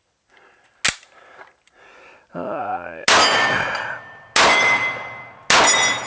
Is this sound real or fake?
real